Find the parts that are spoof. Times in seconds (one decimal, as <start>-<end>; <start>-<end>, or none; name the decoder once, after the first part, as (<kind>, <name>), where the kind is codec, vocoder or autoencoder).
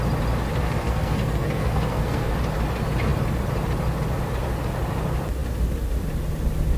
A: 0.6-2.3 (codec, SNAC)